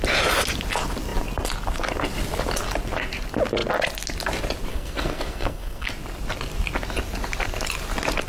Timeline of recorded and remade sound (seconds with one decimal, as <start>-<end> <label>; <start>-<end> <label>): 0.0-4.7 recorded; 4.7-5.9 remade; 5.9-8.3 recorded